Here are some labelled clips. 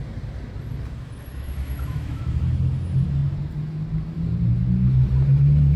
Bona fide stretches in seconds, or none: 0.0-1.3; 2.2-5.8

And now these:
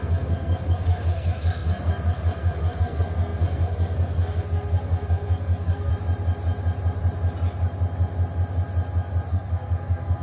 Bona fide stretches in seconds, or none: 5.9-9.3